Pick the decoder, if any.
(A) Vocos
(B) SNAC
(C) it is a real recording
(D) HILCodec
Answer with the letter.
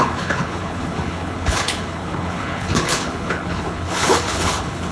D